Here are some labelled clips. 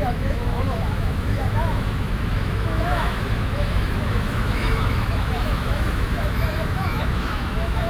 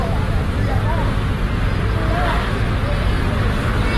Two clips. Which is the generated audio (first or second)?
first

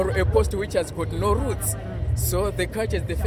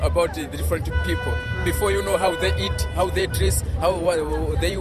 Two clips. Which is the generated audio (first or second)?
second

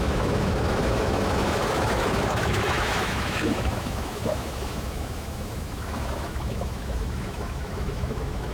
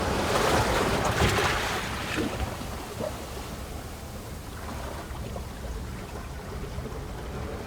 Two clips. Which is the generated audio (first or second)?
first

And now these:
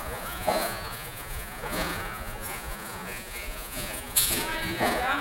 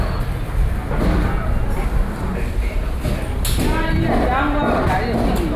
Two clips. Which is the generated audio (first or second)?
first